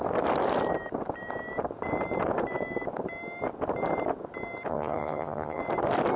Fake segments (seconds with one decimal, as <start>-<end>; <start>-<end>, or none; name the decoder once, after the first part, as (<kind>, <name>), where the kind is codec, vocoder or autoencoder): 4.7-5.6 (vocoder, HiFi-GAN)